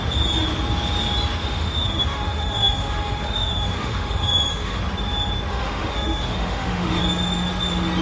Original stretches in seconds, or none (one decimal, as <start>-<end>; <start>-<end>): 0.0-1.4; 4.8-5.5; 7.0-8.0